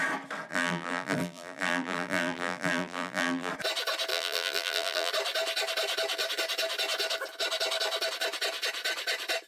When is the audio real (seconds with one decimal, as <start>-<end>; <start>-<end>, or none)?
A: 0.0-0.5; 3.5-4.1; 5.1-9.5